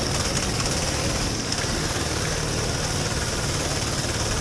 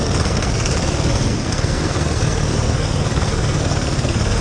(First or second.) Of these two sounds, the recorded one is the first